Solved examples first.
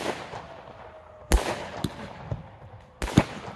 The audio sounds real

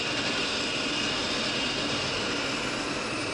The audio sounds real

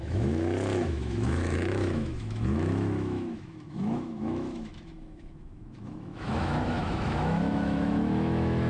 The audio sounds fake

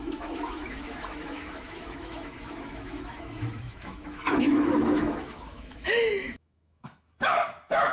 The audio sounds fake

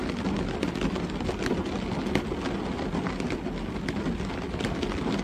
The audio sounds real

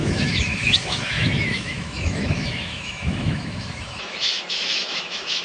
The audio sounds fake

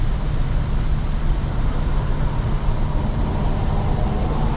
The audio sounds real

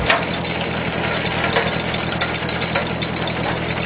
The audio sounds real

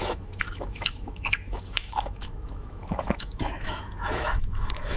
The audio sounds fake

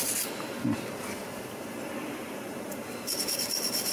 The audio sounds real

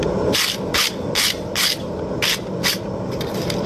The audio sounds real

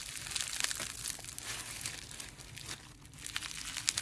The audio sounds real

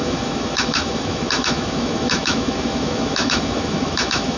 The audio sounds fake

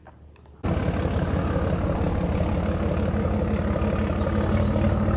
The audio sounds real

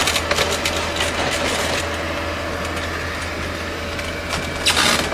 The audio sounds real